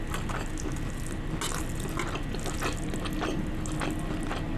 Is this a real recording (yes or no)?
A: yes